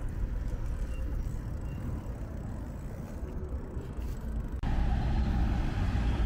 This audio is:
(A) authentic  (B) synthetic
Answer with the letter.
A